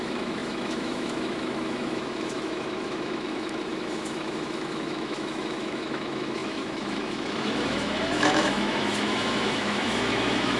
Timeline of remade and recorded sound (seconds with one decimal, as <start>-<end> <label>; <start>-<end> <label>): 0.0-10.6 remade